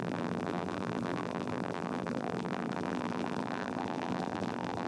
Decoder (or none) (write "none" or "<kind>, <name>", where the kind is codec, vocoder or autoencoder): vocoder, BigVGAN v2